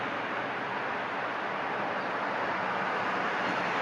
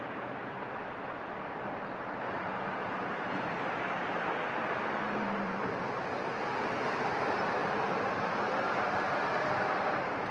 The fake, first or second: second